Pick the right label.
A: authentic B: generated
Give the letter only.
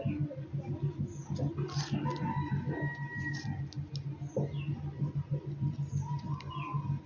A